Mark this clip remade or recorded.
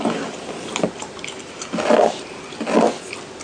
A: recorded